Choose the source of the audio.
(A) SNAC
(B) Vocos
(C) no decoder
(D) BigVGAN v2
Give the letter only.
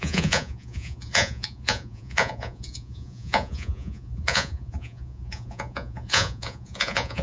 B